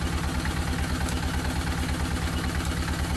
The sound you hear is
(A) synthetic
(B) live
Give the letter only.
B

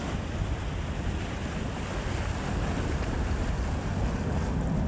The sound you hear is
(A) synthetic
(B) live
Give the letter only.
B